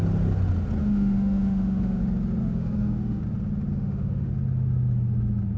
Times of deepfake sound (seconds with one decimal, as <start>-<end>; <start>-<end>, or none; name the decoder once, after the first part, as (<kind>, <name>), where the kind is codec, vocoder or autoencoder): 0.8-2.0 (autoencoder, DAC-VAE); 2.4-3.2; 3.7-4.3

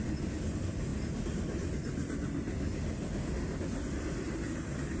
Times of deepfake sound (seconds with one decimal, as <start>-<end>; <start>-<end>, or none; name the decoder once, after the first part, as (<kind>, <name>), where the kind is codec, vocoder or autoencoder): none

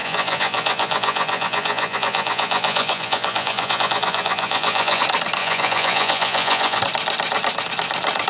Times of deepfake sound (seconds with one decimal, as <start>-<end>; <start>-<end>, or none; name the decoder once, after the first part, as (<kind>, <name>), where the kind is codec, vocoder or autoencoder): 0.0-5.0 (vocoder, Vocos); 5.4-6.8